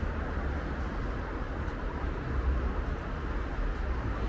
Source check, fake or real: real